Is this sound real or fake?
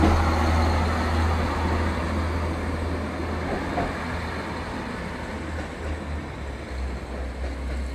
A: real